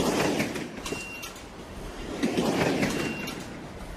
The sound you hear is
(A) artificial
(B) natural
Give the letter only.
B